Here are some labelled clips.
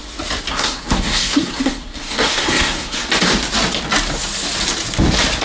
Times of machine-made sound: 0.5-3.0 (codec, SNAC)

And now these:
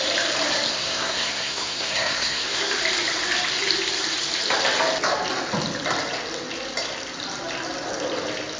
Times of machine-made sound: 0.7-2.7 (codec, SNAC)

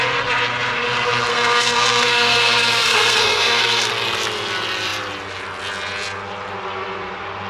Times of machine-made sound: 1.3-3.9 (codec, SNAC)

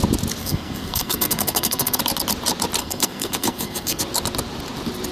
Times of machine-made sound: 0.4-2.0 (codec, SNAC); 2.8-4.0

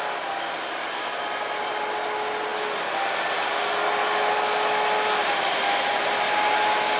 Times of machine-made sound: none